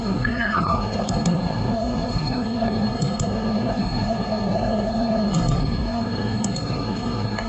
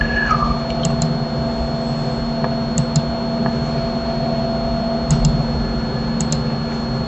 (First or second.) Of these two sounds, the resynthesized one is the first